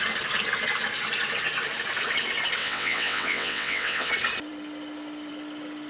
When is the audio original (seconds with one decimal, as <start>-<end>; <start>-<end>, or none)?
0.0-2.6; 4.1-5.9